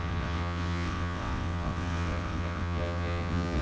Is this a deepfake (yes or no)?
yes